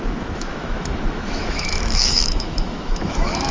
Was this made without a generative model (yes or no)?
no